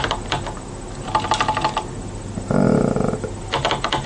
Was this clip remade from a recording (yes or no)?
no